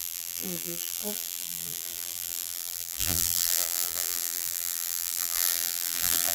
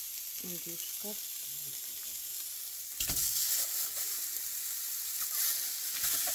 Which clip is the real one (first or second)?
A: second